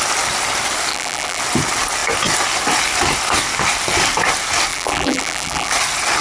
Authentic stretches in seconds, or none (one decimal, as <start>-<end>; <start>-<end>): 0.0-0.9; 1.4-4.7; 5.7-6.2